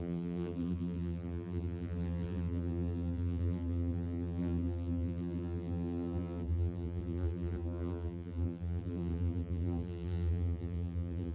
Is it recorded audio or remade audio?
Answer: remade